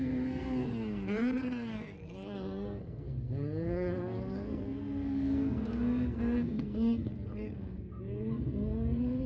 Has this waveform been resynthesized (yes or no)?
yes